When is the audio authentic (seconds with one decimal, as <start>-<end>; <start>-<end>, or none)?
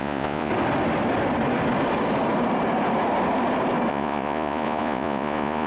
0.5-3.9